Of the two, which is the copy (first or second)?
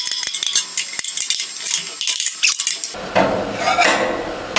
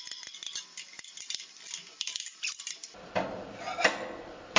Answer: second